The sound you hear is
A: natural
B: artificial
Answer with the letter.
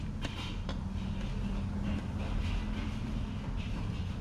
A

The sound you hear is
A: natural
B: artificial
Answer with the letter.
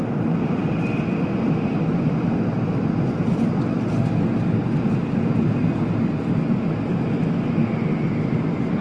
A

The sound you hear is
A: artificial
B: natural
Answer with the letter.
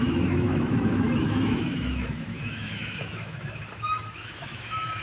A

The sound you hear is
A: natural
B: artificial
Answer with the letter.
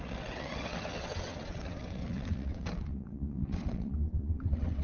B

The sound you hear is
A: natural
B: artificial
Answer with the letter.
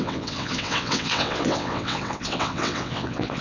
B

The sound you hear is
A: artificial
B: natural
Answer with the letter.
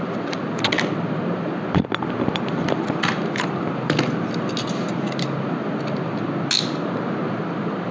B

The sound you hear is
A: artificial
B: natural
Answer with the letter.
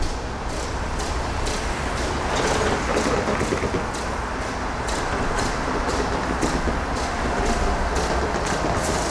B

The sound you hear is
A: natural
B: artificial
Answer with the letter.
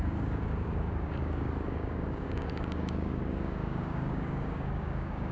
B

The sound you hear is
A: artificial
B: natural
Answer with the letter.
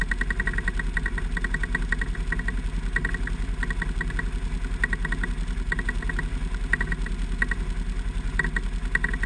B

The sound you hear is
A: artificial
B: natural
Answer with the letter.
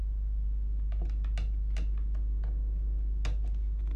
B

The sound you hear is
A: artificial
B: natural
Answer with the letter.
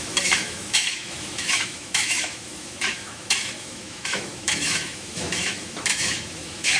A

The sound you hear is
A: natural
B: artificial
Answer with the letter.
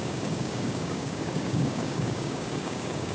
B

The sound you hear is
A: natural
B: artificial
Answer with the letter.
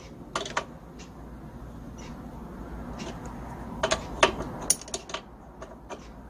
A